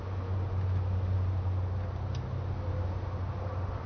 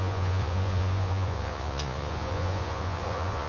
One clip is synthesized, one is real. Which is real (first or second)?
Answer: first